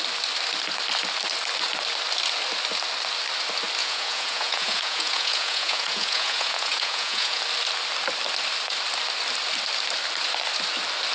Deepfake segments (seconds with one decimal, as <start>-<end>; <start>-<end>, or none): 3.8-7.4